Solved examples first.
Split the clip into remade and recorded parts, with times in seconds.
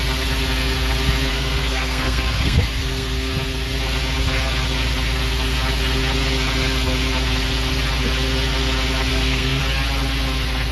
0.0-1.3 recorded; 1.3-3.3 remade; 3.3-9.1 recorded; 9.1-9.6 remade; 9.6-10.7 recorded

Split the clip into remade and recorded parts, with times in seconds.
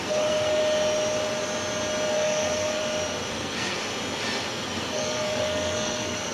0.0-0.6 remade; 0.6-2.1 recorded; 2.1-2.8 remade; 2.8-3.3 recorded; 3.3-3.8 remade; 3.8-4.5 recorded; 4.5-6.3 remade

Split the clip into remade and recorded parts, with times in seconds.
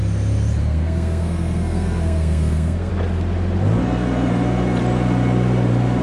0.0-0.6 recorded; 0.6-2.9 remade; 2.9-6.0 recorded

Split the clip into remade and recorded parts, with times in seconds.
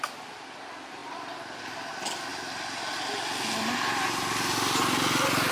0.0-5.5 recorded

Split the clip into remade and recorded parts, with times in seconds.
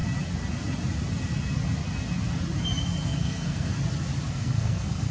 0.0-3.1 recorded; 3.1-3.7 remade; 3.7-4.3 recorded; 4.3-5.1 remade